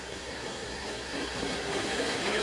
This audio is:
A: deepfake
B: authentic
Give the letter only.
A